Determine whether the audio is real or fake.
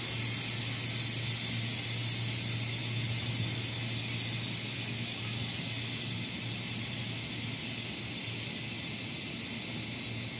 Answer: real